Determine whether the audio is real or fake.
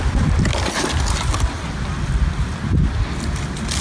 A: real